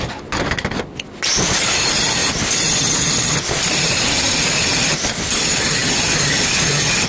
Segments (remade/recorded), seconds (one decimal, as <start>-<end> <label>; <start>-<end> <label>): 0.0-7.1 recorded